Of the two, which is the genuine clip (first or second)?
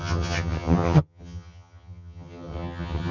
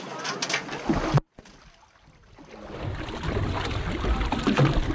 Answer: second